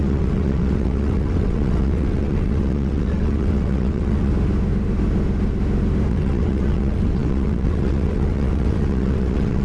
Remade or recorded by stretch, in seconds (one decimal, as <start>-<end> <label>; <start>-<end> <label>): 0.0-4.3 remade; 4.3-6.1 recorded; 6.1-9.6 remade